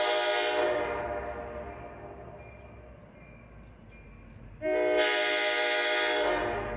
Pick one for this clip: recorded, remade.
recorded